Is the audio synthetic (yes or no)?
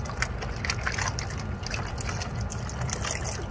no